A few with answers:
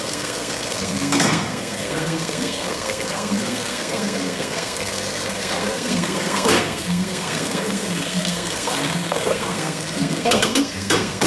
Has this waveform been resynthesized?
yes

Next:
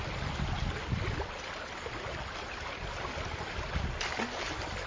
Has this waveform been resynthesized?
no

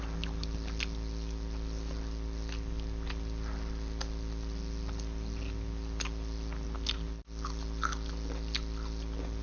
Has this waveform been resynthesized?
no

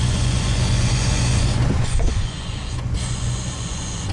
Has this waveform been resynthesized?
yes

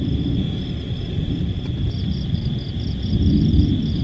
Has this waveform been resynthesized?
no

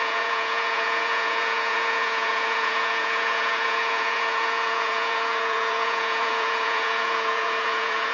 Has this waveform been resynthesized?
yes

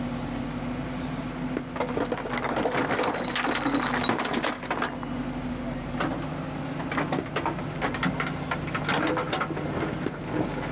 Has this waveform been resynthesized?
no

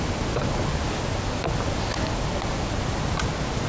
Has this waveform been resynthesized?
no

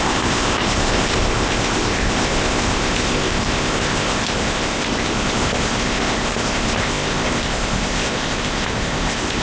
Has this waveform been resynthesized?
yes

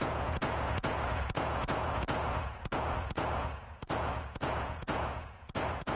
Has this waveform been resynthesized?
yes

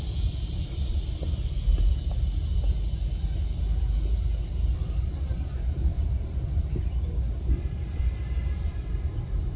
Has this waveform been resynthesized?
no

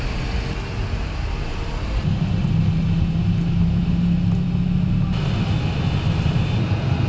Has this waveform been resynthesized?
no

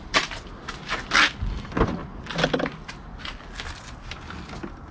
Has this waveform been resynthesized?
no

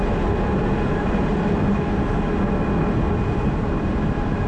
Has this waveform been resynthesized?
no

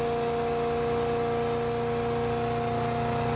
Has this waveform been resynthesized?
no